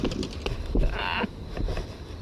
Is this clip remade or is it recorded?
recorded